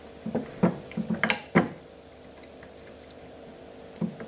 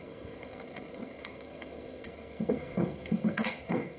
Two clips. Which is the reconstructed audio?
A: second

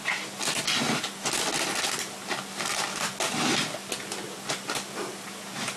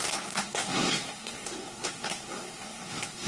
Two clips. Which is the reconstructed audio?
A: second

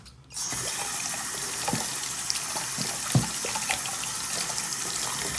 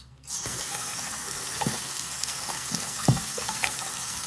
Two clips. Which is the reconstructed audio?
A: second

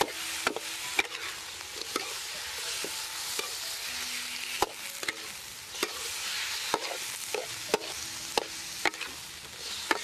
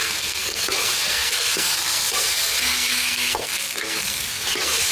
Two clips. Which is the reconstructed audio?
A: second